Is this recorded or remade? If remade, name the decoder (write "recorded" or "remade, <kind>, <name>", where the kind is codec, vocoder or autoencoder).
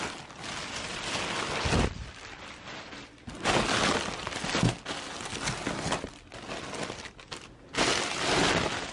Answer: recorded